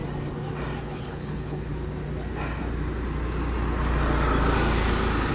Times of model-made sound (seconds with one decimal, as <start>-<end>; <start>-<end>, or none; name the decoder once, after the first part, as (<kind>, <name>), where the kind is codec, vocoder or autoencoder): 0.8-1.7 (codec, HILCodec)